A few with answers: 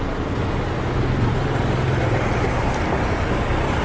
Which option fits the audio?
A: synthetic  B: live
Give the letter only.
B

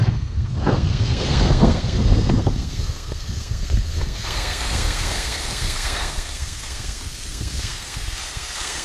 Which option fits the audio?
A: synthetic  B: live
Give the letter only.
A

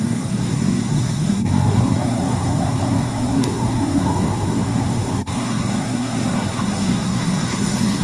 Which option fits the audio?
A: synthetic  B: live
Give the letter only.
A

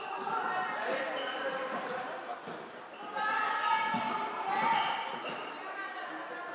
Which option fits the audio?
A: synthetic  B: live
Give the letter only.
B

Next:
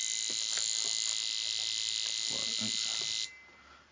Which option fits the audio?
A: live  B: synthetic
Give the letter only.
A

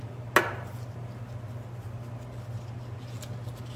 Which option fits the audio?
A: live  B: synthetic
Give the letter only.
A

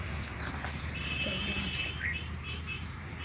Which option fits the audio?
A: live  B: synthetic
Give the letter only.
A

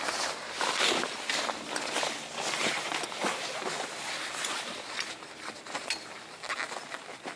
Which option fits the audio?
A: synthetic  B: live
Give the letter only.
B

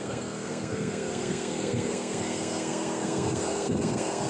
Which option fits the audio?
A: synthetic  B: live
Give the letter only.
A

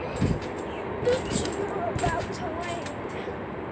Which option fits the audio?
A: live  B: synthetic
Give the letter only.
A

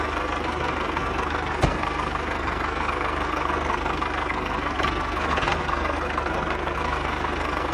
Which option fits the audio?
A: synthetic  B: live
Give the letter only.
A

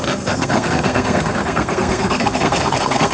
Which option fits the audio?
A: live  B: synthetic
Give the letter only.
B